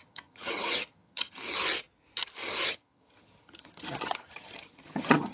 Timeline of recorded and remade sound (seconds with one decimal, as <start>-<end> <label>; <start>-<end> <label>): 0.0-1.4 remade; 1.4-2.7 recorded; 2.7-5.3 remade